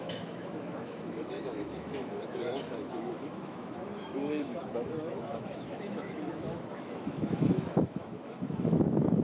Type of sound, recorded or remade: remade